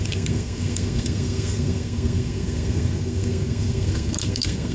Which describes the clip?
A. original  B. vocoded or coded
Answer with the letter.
B